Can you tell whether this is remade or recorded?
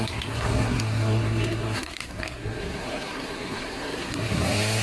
remade